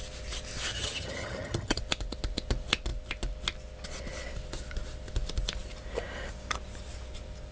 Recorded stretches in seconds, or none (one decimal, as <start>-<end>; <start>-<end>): 0.0-0.7; 1.8-7.5